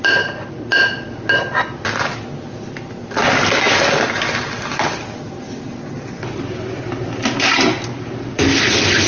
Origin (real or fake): real